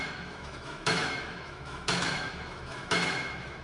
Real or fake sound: fake